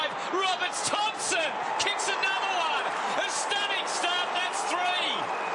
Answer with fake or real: fake